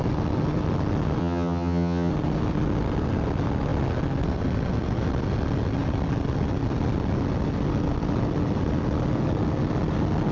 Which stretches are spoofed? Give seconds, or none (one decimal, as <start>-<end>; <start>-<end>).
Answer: 1.2-2.1